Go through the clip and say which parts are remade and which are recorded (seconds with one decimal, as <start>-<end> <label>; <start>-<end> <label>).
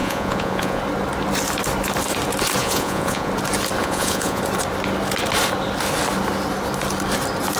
0.0-0.8 remade; 0.8-2.6 recorded; 2.6-3.3 remade; 3.3-3.8 recorded; 3.8-4.4 remade; 4.4-7.6 recorded